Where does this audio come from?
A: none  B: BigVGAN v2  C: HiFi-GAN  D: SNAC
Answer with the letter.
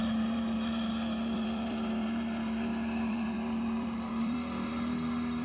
B